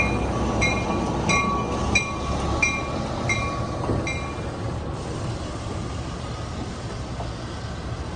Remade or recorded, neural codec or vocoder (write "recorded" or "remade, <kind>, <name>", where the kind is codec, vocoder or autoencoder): recorded